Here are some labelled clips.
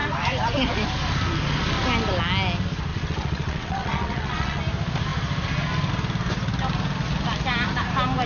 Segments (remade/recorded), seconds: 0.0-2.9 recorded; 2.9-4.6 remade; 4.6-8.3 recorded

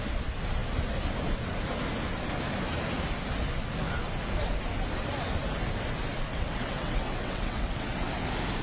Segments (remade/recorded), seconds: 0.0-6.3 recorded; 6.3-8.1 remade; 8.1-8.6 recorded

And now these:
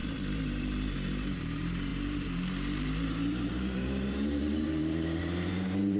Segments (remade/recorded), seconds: 0.0-6.0 remade